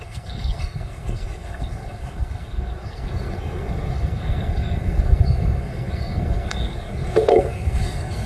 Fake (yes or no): yes